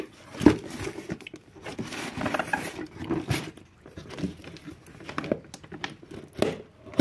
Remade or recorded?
recorded